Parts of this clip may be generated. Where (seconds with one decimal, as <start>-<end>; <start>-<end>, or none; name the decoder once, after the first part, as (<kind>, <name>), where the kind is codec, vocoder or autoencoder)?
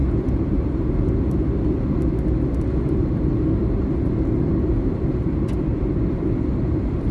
5.7-7.1 (vocoder, BigVGAN v2)